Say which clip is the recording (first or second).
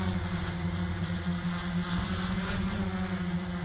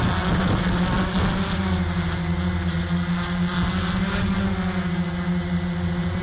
second